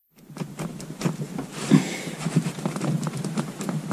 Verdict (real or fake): real